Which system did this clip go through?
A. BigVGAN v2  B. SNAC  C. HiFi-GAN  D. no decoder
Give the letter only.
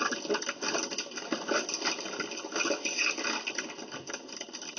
D